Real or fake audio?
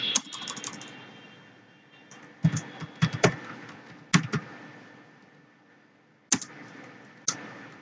real